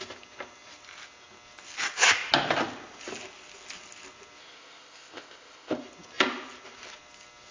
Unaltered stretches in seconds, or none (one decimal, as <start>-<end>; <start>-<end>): 0.0-4.4; 5.8-7.5